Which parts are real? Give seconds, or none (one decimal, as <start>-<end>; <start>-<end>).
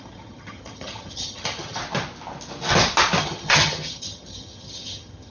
1.8-3.2